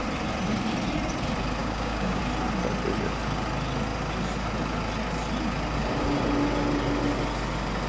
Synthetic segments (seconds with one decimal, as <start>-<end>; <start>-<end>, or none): 1.6-2.2